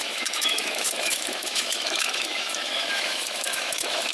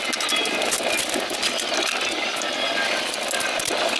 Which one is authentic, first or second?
second